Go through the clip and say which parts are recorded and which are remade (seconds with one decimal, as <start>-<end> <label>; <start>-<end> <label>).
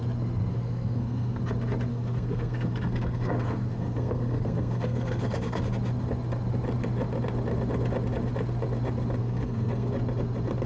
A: 0.0-0.5 recorded; 0.5-1.4 remade; 1.4-1.9 recorded; 1.9-5.6 remade; 5.6-9.2 recorded; 9.2-9.9 remade; 9.9-10.7 recorded